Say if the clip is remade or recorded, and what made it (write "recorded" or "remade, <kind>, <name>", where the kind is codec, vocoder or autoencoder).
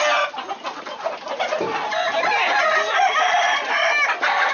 recorded